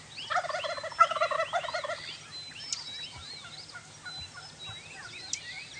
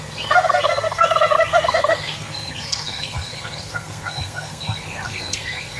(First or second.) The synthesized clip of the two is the second